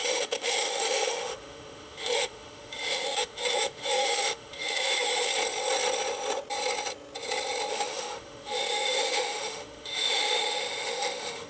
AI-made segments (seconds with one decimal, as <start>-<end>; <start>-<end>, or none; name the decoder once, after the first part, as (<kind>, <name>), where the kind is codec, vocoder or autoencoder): 0.0-5.3 (autoencoder, DAC-VAE); 7.7-11.5